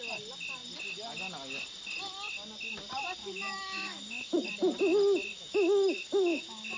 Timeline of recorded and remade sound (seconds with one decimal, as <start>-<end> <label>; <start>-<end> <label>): 0.0-3.2 recorded; 3.2-4.5 remade; 4.5-5.3 recorded; 5.3-6.8 remade

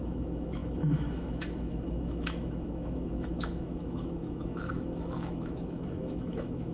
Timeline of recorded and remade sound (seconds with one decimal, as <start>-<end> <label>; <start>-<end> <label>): 0.0-6.7 remade